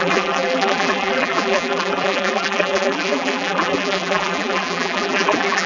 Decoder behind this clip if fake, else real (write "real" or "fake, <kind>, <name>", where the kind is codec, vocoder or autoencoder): fake, vocoder, BigVGAN v2